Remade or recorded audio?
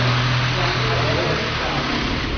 recorded